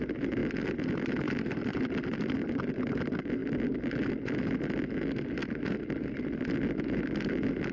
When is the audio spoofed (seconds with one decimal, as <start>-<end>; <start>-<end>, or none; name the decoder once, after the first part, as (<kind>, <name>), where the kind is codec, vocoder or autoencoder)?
none